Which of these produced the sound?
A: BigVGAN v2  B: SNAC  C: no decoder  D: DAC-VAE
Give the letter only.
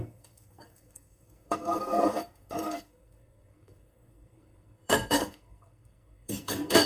B